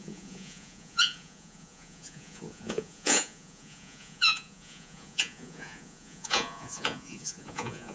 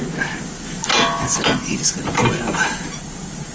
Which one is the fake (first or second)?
first